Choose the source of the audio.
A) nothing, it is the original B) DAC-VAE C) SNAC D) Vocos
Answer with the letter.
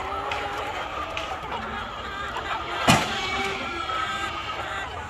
A